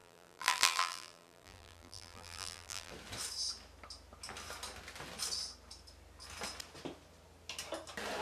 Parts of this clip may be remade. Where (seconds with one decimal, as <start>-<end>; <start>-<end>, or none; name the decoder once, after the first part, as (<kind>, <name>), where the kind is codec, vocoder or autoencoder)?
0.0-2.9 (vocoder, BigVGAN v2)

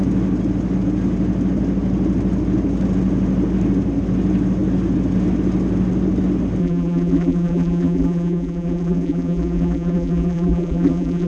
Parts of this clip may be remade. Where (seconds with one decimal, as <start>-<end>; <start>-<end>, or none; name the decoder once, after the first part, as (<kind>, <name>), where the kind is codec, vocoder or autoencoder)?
6.6-11.3 (vocoder, BigVGAN v2)

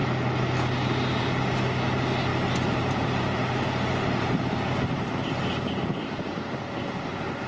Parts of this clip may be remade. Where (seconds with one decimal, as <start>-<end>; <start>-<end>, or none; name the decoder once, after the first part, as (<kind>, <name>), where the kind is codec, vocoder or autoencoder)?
2.3-5.6 (vocoder, BigVGAN v2)

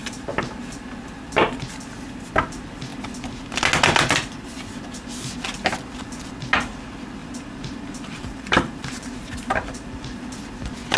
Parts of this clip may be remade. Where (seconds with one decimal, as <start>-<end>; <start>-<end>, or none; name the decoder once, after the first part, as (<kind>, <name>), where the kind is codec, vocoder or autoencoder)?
0.0-0.7 (vocoder, BigVGAN v2); 7.2-10.2